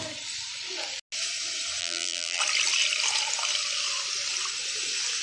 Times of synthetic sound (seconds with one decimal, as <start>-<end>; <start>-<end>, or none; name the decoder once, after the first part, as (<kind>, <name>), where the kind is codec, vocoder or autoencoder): 1.8-2.4 (vocoder, BigVGAN v2)